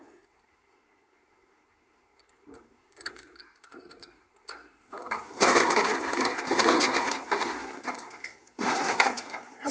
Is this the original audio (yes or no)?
no